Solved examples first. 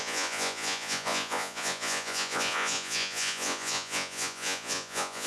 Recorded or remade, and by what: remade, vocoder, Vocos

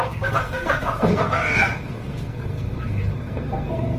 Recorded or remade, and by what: remade, codec, SNAC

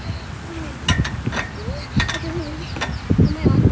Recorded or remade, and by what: recorded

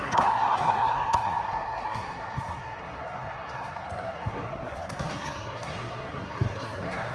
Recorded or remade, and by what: remade, codec, SNAC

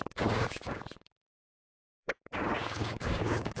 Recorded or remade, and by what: remade, codec, DAC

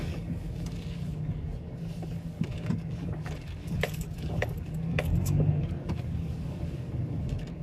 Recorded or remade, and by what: remade, codec, DAC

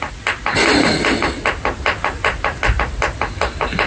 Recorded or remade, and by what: recorded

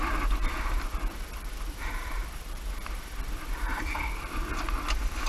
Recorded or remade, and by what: remade, vocoder, BigVGAN v2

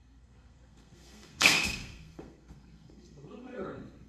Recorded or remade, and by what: remade, codec, SNAC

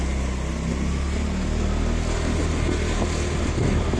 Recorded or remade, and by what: recorded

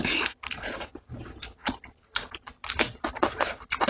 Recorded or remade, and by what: recorded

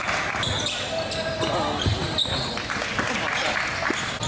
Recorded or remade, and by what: recorded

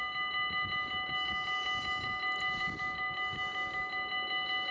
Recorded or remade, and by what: recorded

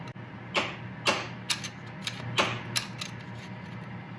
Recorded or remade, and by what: recorded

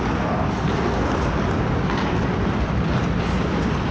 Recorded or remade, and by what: recorded